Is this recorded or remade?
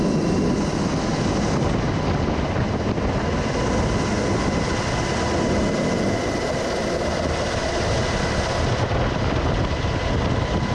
recorded